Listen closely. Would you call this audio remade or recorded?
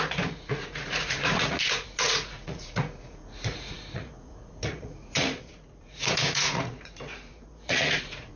remade